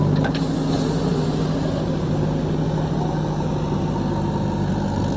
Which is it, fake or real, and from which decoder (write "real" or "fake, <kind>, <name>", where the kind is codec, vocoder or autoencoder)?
real